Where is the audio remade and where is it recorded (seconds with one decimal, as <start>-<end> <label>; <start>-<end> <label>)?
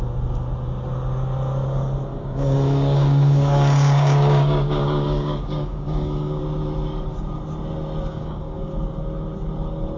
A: 0.0-2.1 recorded; 2.1-6.4 remade; 6.4-8.1 recorded; 8.1-8.7 remade; 8.7-10.0 recorded